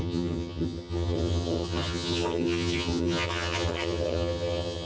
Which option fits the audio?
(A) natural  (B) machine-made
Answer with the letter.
B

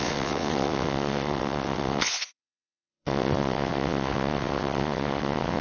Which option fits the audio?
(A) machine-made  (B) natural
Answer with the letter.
A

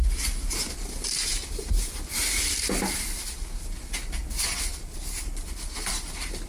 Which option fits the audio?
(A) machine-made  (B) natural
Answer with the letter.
B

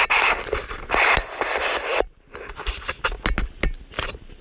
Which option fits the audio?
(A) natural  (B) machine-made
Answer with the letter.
A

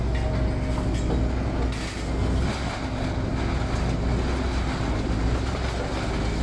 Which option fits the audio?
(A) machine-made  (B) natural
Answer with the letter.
B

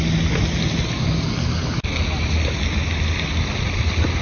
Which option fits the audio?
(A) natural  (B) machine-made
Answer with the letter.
A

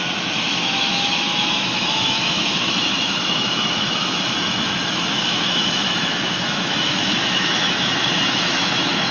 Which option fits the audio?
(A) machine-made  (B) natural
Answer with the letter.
A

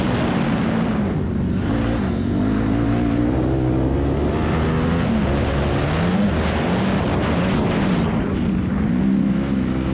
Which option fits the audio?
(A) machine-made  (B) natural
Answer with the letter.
B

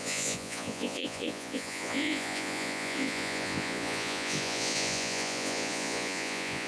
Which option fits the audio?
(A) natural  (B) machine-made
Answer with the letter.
B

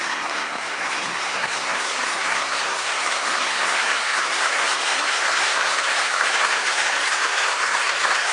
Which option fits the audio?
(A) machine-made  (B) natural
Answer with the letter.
A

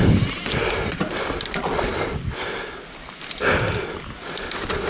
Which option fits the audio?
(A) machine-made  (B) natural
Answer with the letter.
B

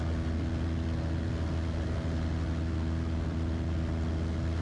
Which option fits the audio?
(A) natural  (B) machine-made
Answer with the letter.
A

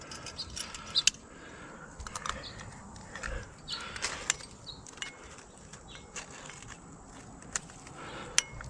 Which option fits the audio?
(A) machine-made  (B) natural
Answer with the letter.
B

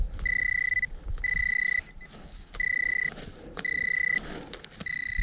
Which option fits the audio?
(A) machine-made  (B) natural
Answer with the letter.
B